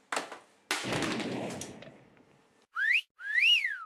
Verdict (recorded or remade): recorded